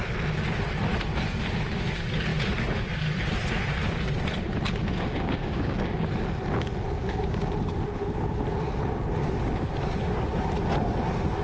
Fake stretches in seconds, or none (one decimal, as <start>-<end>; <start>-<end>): 4.8-6.1; 7.0-7.5